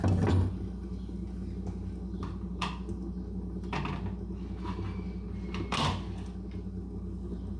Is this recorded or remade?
recorded